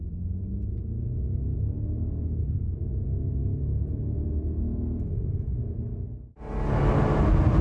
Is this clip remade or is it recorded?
recorded